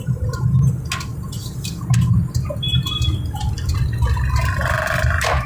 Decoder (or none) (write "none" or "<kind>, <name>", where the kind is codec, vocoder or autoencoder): none